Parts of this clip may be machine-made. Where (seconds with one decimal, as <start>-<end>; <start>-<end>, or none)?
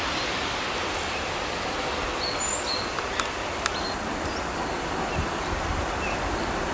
none